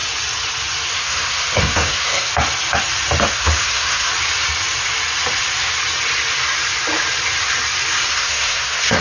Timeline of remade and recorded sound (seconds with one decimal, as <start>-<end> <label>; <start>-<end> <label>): 0.0-0.9 recorded; 0.9-2.3 remade; 2.3-3.3 recorded; 3.3-4.1 remade; 4.1-8.1 recorded; 8.1-9.0 remade